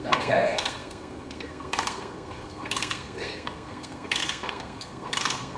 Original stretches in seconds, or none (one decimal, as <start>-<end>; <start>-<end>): none